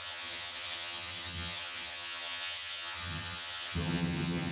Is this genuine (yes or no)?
no